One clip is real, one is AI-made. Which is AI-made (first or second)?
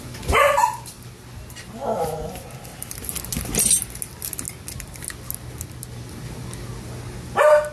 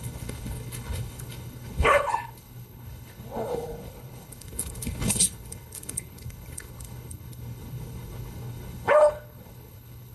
second